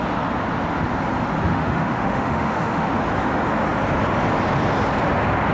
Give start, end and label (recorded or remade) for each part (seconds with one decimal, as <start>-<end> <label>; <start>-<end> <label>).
0.0-1.5 recorded; 1.5-2.9 remade; 2.9-5.5 recorded